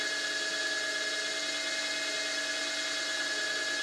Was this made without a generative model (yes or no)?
yes